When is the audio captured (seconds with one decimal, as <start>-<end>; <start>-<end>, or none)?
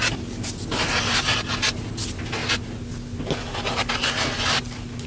0.0-5.1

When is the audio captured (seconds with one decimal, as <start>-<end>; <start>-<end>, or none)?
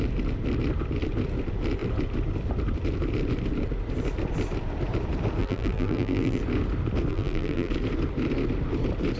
0.0-5.4; 6.4-7.1; 7.7-9.2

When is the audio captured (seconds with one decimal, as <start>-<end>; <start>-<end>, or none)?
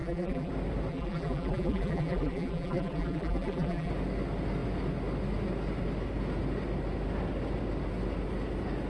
0.5-0.9; 3.9-8.9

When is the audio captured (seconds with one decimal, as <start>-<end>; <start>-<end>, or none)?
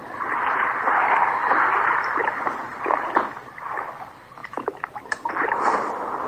0.7-1.4; 3.1-4.4; 5.3-6.3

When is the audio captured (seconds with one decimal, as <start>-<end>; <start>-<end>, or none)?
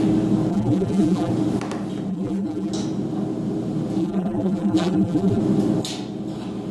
0.0-0.5; 1.3-2.1; 2.7-4.0; 5.4-6.7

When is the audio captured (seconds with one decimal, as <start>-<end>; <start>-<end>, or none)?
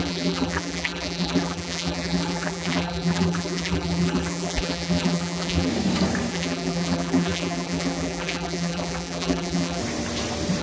5.7-6.3; 9.8-10.6